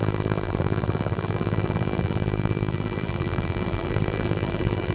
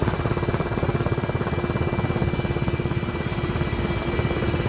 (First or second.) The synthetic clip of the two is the first